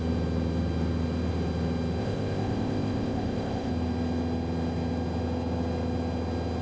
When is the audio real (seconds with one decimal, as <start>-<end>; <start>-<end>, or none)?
0.0-2.0; 3.7-6.6